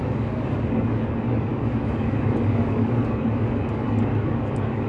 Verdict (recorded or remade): remade